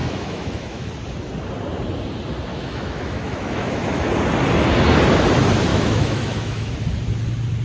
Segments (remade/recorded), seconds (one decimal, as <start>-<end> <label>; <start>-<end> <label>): 0.0-0.9 remade; 0.9-2.5 recorded; 2.5-4.1 remade; 4.1-5.7 recorded; 5.7-6.7 remade; 6.7-7.6 recorded

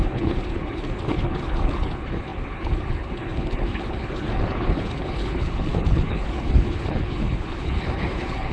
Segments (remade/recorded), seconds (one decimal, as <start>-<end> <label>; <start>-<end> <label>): 0.0-8.5 remade

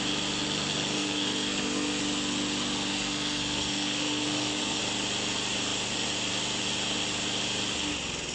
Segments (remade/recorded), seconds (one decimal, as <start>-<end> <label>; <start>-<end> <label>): 0.0-0.9 recorded; 0.9-2.0 remade; 2.0-2.9 recorded; 2.9-4.8 remade; 4.8-8.3 recorded

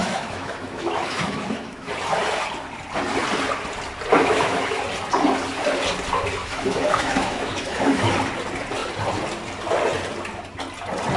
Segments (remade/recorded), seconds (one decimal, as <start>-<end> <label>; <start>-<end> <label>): 0.0-1.9 remade; 1.9-4.1 recorded; 4.1-4.8 remade; 4.8-6.4 recorded; 6.4-8.1 remade; 8.1-11.2 recorded

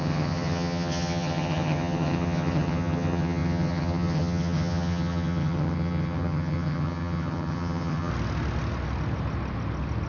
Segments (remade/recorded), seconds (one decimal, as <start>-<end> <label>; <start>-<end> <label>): 0.0-8.1 remade; 8.1-10.1 recorded